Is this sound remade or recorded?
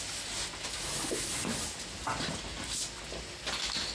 recorded